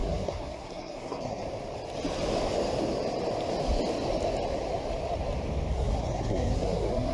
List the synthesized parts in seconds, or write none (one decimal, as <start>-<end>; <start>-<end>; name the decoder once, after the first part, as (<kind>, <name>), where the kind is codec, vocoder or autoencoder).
0.0-1.4 (codec, SNAC); 5.7-7.1